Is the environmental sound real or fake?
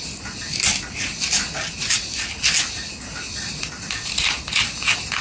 real